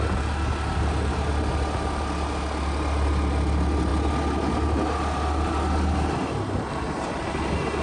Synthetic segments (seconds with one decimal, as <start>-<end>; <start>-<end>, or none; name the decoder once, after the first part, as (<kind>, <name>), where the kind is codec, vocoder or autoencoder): none